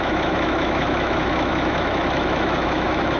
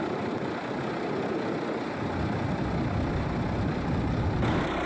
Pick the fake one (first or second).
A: first